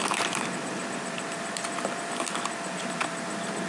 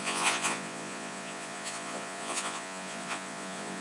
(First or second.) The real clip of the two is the first